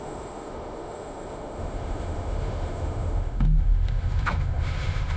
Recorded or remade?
remade